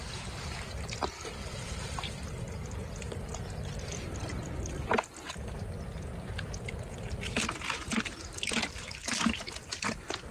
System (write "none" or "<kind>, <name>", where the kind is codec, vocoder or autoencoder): none